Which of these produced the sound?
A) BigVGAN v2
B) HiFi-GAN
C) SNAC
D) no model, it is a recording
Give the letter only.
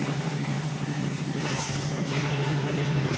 C